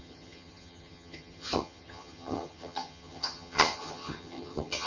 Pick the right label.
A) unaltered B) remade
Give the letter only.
B